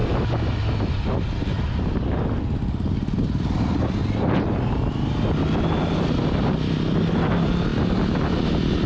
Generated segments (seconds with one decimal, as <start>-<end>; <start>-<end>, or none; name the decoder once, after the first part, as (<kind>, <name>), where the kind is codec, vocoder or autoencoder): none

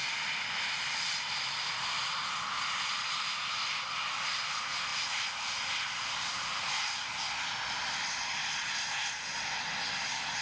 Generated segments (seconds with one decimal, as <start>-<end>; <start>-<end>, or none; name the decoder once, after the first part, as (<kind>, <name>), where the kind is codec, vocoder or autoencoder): none

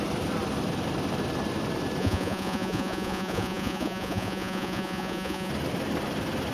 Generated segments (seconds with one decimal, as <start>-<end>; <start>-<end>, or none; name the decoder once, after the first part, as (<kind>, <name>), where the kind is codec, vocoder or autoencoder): 2.0-5.5 (vocoder, Vocos)